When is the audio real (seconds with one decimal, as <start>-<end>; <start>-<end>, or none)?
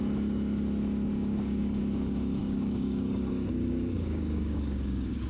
0.0-1.1; 1.8-2.4